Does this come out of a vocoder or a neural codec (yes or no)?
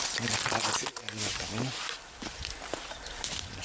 no